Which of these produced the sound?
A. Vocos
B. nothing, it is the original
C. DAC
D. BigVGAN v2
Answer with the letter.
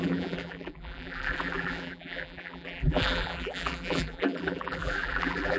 D